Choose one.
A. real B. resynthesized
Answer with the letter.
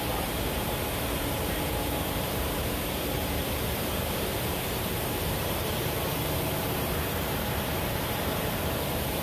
B